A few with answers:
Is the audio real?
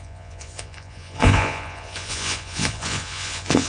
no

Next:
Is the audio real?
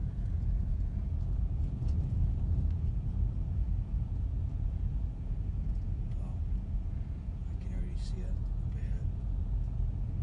no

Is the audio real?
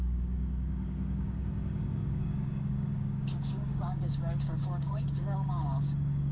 no